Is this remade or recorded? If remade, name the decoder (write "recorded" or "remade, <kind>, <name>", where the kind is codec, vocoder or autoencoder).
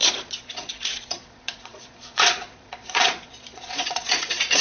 remade, vocoder, Vocos